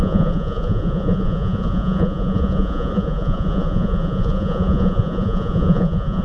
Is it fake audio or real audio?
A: fake